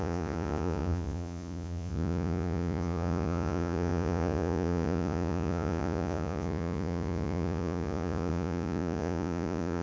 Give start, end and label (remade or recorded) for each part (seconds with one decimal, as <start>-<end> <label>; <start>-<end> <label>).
0.0-9.8 remade